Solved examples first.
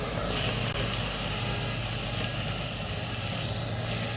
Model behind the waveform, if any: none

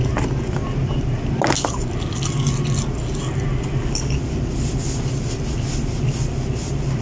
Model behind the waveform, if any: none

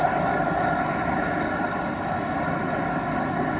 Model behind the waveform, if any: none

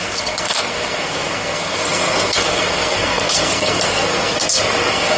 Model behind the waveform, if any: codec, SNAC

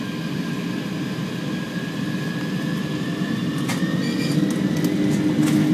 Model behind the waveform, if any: none